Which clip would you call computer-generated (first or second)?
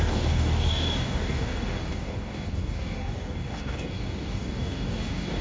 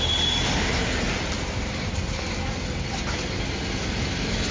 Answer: first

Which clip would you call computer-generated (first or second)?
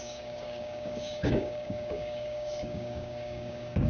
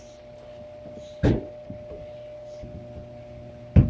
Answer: first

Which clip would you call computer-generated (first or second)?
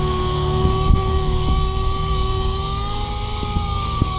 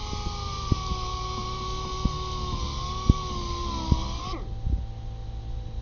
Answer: first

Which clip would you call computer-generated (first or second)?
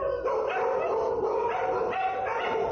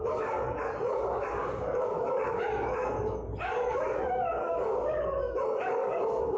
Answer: second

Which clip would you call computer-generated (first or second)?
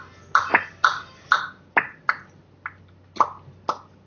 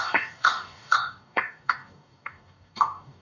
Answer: second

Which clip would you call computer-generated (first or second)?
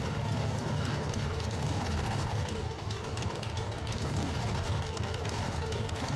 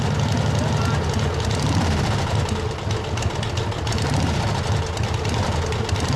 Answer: first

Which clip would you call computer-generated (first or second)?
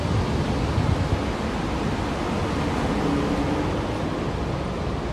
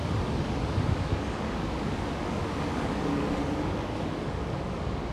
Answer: second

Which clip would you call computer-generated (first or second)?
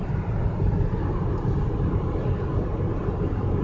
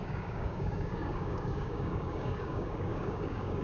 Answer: second